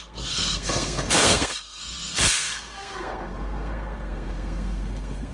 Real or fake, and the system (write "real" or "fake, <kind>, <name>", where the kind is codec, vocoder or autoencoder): fake, codec, SNAC